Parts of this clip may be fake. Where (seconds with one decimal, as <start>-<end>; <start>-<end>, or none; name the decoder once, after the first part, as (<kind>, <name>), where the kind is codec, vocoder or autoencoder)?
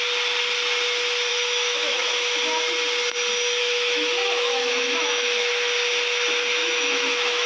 1.3-2.1 (autoencoder, DAC-VAE); 3.6-5.5; 6.6-7.5